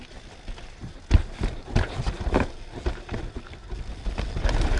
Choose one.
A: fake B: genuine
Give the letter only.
B